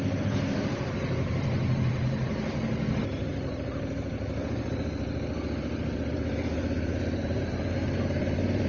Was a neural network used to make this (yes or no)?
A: yes